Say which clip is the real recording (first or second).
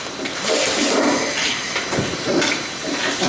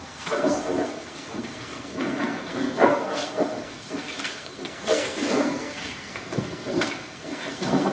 first